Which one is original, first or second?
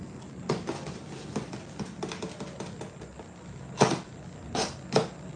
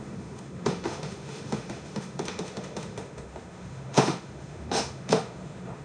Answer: first